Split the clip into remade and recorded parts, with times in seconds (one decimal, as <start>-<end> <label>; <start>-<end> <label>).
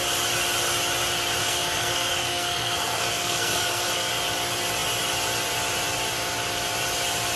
0.0-1.4 recorded; 1.4-4.1 remade; 4.1-7.4 recorded